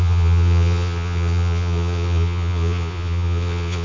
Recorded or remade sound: remade